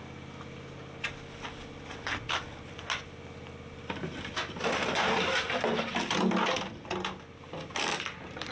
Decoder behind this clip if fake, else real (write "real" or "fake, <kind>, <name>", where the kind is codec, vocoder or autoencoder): real